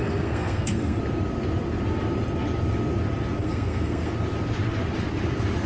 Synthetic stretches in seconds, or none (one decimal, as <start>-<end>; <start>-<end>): 0.0-1.0; 3.4-4.1